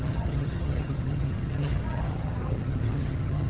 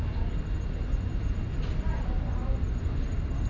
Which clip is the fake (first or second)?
first